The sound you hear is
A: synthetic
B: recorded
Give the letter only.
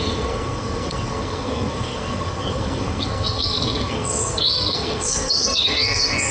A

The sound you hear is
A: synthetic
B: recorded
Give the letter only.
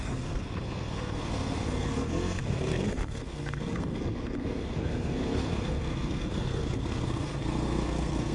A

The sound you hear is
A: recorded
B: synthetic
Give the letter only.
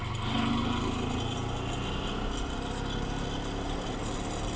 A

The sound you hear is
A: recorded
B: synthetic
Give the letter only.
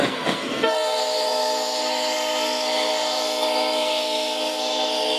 B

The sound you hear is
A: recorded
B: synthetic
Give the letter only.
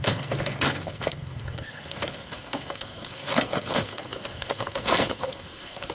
B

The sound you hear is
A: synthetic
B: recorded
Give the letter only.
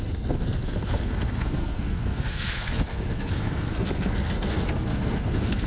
A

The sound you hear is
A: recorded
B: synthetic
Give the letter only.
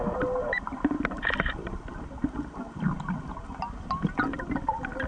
A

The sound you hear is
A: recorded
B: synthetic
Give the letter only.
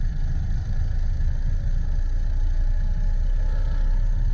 A